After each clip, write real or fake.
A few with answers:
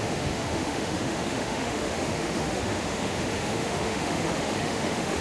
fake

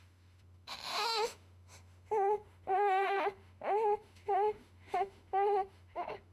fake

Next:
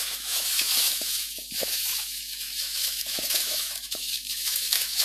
fake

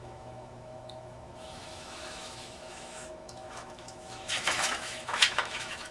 fake